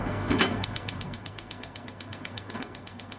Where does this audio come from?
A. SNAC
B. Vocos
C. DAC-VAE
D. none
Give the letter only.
A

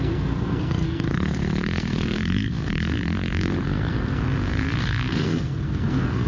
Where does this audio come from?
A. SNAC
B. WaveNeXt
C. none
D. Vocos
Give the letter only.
A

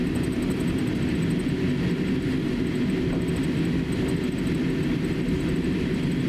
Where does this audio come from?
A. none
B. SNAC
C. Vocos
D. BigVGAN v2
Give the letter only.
A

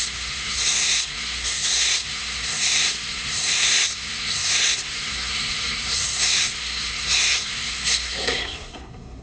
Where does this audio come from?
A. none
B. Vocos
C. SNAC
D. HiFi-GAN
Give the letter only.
C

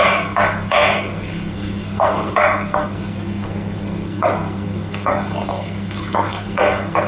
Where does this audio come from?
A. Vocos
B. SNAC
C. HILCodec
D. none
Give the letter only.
B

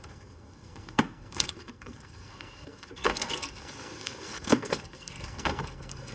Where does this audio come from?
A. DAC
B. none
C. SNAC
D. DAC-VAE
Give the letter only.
C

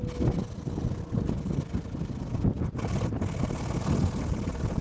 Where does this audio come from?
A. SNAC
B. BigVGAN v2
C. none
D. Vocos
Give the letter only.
C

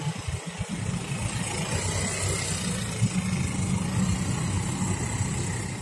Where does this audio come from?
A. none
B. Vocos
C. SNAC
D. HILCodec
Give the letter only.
A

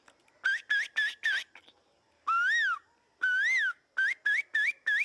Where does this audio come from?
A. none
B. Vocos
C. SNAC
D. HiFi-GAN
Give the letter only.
A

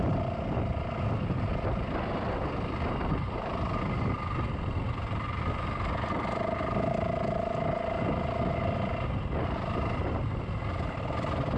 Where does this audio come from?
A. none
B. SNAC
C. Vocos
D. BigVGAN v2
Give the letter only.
A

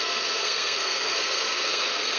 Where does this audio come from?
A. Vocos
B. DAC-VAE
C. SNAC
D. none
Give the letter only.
C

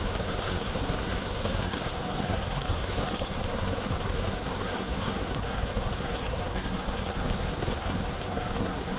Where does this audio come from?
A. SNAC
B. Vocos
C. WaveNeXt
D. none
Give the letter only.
A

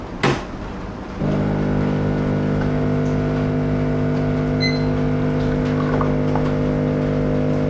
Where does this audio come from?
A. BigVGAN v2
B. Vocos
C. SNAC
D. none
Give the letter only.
D